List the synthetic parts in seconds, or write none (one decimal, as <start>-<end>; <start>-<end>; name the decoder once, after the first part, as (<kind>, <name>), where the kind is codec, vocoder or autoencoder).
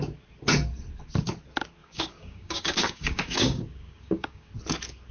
1.8-4.5 (codec, DAC)